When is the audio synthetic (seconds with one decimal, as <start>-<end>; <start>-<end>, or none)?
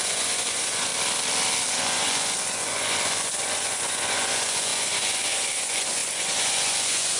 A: 0.0-0.9; 1.7-7.2